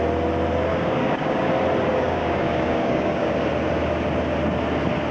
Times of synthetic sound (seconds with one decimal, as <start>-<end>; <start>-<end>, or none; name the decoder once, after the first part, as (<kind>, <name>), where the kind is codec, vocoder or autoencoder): 0.7-1.5 (codec, DAC); 1.9-3.3